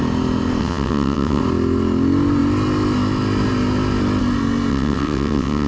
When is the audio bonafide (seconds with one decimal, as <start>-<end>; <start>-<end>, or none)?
0.0-0.6; 1.4-4.7